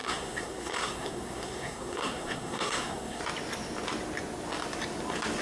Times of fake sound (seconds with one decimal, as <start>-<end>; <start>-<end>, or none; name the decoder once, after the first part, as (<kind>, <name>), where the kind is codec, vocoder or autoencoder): 0.0-3.2 (codec, SNAC)